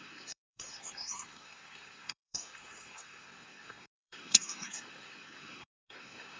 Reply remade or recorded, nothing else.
remade